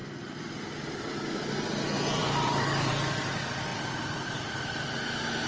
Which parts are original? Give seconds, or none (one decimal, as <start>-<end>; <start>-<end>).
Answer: 0.0-2.2; 2.9-3.7; 4.9-5.5